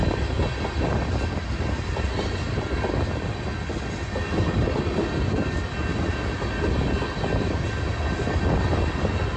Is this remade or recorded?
recorded